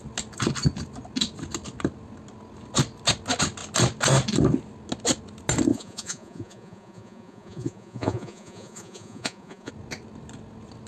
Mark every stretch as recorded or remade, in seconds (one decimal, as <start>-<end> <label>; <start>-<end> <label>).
0.0-5.7 recorded; 5.7-9.7 remade; 9.7-10.9 recorded